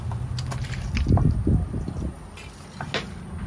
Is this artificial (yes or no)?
no